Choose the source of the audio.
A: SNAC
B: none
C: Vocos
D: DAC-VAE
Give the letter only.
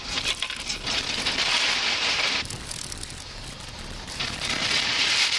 B